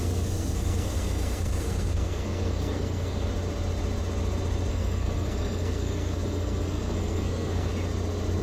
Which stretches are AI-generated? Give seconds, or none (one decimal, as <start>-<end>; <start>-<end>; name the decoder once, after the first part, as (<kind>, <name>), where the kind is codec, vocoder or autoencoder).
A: 0.0-3.3 (codec, SNAC); 4.7-7.7